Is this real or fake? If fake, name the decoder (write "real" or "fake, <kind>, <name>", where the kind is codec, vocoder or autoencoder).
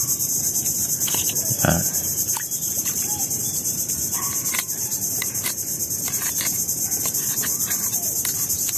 fake, vocoder, BigVGAN v2